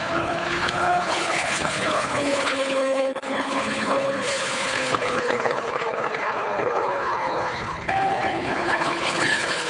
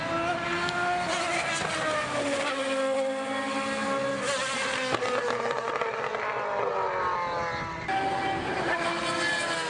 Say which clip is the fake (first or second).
first